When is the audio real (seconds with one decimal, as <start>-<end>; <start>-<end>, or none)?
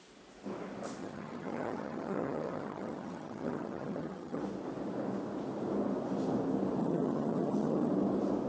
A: 0.0-1.0; 4.4-6.8; 7.9-8.5